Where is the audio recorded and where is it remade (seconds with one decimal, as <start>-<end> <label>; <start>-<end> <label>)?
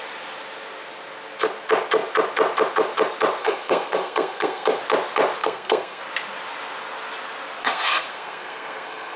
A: 0.0-3.4 recorded; 3.4-4.8 remade; 4.8-5.4 recorded; 5.4-6.0 remade; 6.0-7.6 recorded; 7.6-9.2 remade